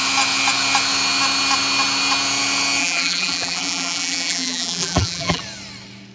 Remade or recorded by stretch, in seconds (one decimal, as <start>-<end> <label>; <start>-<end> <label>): 0.0-2.8 recorded; 2.8-5.4 remade; 5.4-6.1 recorded